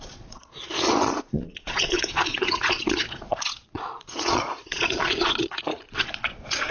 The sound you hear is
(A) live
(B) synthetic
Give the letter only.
B